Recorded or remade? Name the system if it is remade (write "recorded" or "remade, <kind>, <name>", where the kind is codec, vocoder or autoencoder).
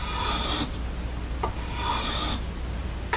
recorded